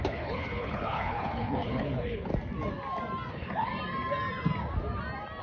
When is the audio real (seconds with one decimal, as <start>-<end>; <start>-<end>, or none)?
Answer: 2.3-3.3; 3.7-5.4